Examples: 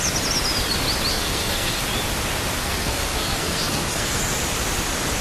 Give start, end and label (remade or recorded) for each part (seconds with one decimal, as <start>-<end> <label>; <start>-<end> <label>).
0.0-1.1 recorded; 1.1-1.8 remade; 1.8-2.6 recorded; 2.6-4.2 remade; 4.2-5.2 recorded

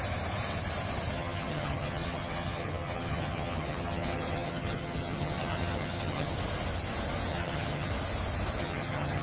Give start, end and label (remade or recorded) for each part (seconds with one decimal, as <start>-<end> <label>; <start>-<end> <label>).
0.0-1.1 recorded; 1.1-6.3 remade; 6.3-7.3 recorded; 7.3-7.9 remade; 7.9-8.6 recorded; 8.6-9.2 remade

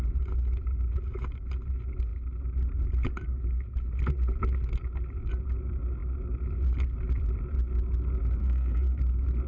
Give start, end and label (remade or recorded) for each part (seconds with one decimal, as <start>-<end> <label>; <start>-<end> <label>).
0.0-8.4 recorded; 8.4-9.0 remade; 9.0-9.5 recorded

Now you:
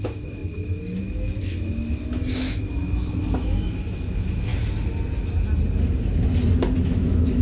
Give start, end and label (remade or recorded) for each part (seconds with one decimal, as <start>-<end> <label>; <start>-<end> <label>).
0.0-4.5 remade; 4.5-6.8 recorded; 6.8-7.4 remade

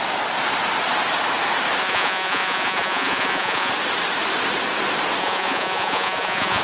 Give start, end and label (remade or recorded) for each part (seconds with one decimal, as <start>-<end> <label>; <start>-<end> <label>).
0.0-1.8 recorded; 1.8-3.7 remade; 3.7-5.2 recorded; 5.2-6.6 remade